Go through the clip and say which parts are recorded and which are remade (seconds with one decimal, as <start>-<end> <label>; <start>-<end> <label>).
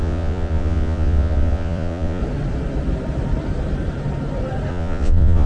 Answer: 0.0-2.2 remade; 2.2-4.7 recorded; 4.7-5.5 remade